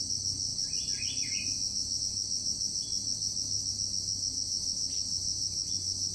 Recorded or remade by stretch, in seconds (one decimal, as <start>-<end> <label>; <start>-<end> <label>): 0.0-6.1 recorded